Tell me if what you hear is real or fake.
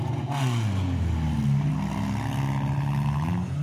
real